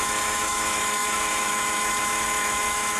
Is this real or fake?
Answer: fake